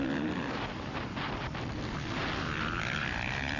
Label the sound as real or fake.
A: real